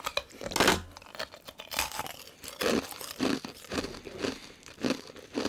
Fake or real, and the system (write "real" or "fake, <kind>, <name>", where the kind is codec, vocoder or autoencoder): real